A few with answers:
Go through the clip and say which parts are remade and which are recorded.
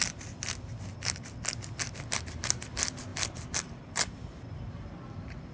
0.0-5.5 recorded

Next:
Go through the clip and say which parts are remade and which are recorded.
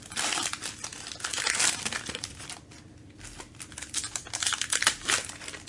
0.0-5.7 recorded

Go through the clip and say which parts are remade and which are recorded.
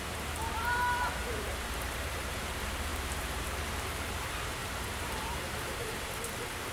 0.0-1.2 recorded; 1.2-2.2 remade; 2.2-2.9 recorded; 2.9-3.6 remade; 3.6-4.6 recorded; 4.6-6.0 remade; 6.0-6.7 recorded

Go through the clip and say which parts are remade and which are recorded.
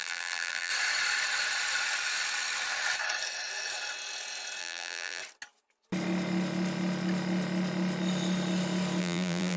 0.0-0.7 remade; 0.7-4.6 recorded; 4.6-5.2 remade; 5.2-9.0 recorded; 9.0-9.6 remade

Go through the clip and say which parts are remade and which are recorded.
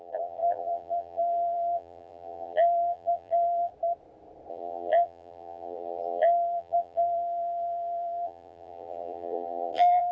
0.0-3.7 remade; 3.7-4.5 recorded; 4.5-10.1 remade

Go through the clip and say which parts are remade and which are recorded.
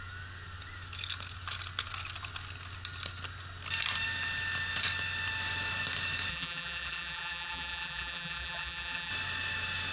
0.0-6.3 recorded; 6.3-9.1 remade; 9.1-9.9 recorded